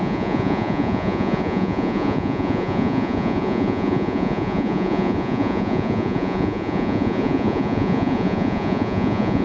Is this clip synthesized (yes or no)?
yes